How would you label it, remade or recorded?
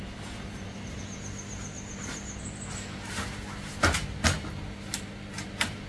recorded